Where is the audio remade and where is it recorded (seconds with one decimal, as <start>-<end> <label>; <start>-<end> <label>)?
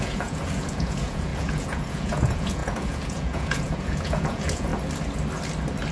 0.0-4.7 remade; 4.7-5.9 recorded